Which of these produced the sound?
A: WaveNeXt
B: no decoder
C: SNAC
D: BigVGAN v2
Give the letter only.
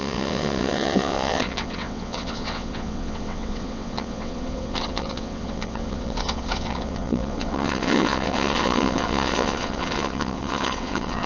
A